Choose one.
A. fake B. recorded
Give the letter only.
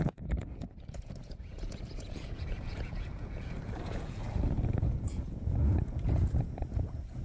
A